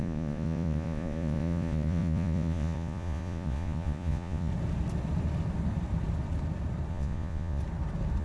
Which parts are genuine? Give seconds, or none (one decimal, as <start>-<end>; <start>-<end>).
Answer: 4.5-6.9; 7.6-8.2